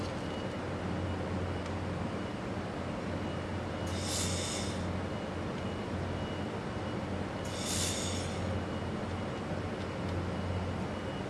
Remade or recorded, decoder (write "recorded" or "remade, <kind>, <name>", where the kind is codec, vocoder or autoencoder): recorded